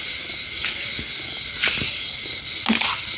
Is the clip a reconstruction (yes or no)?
no